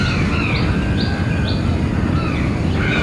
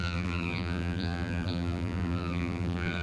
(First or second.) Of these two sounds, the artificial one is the second